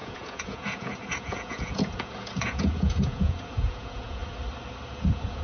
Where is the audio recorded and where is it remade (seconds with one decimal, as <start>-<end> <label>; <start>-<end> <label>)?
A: 0.0-4.2 remade; 4.2-4.9 recorded; 4.9-5.4 remade

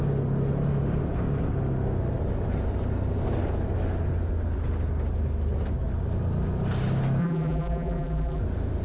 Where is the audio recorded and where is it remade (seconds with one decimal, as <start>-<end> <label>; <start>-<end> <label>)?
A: 0.0-7.2 recorded; 7.2-8.4 remade; 8.4-8.8 recorded

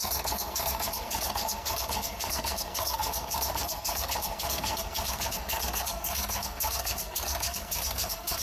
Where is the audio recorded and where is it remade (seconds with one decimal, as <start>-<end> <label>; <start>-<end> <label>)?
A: 0.0-8.4 remade